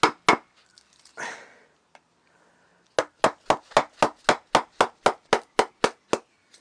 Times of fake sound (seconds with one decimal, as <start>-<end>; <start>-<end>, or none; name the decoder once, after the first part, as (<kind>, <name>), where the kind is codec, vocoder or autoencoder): none